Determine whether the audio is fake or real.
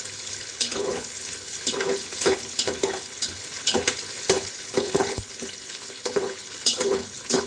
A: fake